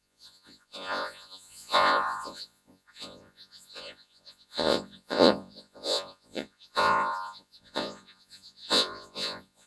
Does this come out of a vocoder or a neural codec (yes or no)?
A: yes